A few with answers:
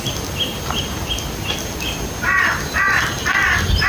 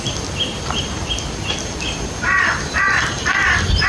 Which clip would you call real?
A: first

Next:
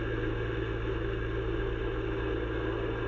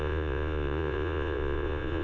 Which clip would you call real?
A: first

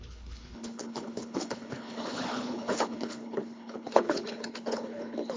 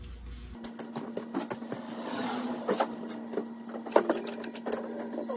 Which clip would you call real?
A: second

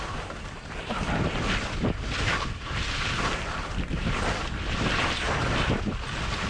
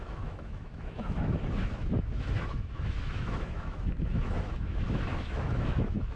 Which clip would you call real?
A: first